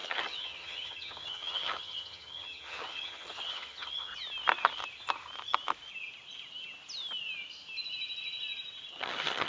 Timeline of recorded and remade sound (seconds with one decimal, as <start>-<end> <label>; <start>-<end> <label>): 0.0-4.1 remade; 4.1-8.9 recorded; 8.9-9.5 remade